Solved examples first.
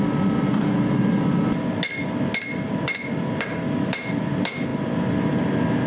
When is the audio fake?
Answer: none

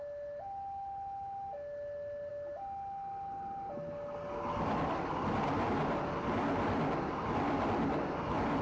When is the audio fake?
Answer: none

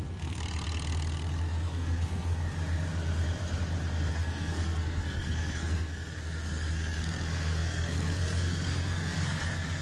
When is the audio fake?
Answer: 0.0-0.4; 1.4-2.4; 4.1-9.8

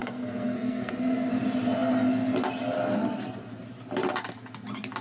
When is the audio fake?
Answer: 0.0-1.3

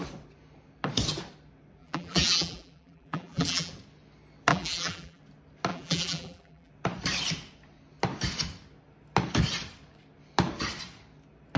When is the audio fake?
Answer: 1.8-3.7; 4.5-5.2; 5.7-6.7

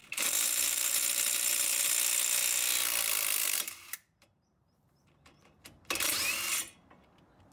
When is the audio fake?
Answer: 0.0-1.9; 3.4-5.6

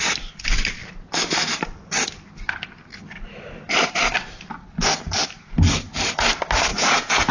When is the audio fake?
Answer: 6.7-7.3

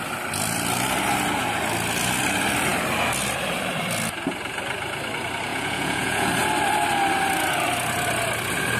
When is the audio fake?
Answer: 5.5-6.3